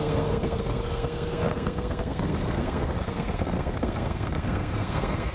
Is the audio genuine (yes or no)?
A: no